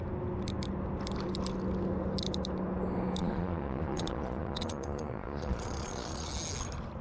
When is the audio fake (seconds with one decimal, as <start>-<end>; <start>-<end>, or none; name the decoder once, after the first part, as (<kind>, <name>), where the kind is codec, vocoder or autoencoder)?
3.2-6.3 (vocoder, Vocos)